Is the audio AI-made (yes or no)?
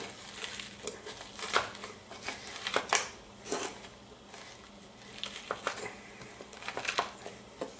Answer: no